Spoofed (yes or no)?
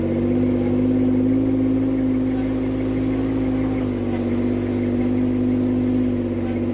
no